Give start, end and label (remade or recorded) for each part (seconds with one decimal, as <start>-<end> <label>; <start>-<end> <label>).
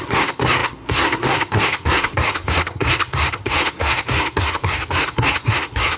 0.0-6.0 remade